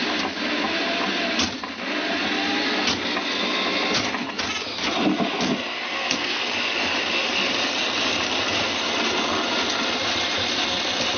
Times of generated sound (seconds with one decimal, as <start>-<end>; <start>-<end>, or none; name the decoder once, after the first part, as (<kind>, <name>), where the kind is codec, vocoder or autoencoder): 5.9-6.4 (codec, SNAC)